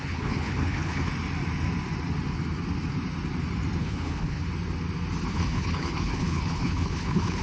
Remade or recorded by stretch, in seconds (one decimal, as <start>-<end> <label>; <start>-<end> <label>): 0.0-1.1 remade; 1.1-3.8 recorded; 3.8-4.4 remade; 4.4-5.3 recorded; 5.3-7.4 remade